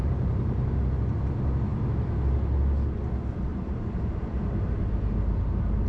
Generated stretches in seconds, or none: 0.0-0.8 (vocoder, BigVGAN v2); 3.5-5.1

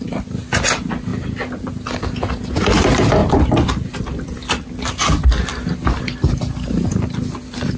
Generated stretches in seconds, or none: 1.1-1.7 (vocoder, BigVGAN v2); 3.2-4.9

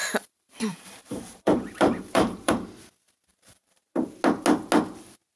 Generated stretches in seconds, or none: 0.0-2.5 (vocoder, BigVGAN v2); 3.3-4.1

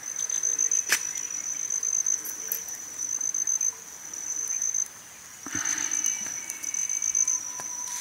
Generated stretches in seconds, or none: none